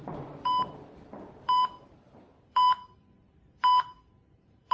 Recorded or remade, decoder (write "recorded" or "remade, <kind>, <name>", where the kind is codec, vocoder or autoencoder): remade, vocoder, BigVGAN v2